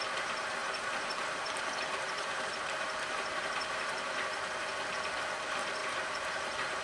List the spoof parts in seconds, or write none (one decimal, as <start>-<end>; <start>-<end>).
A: 0.6-4.7; 5.8-6.8